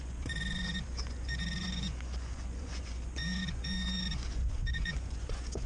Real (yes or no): no